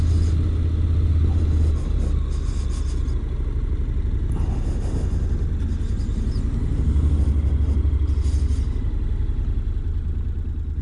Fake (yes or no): no